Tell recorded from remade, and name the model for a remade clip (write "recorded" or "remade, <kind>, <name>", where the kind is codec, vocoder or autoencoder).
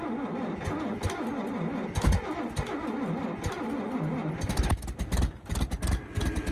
recorded